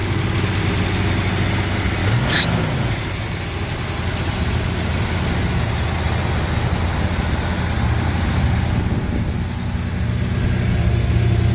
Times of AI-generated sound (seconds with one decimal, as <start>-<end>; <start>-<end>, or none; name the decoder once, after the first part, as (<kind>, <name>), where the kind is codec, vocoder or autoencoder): none